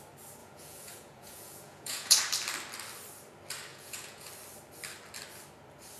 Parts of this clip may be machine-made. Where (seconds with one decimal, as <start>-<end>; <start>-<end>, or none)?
0.4-2.2; 3.7-4.3